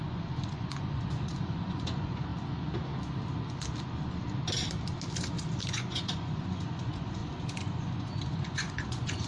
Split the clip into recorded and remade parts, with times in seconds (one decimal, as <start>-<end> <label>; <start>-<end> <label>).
0.0-2.3 remade; 2.3-5.7 recorded; 5.7-9.3 remade